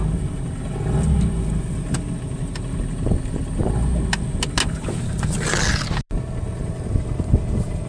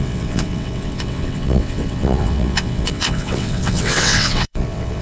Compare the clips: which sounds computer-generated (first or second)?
second